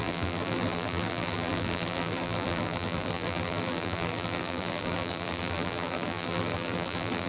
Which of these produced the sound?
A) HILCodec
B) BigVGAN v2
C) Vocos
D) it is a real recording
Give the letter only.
B